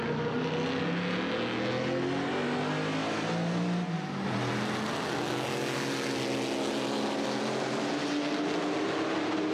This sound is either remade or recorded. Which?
recorded